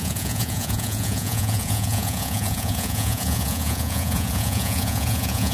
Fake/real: fake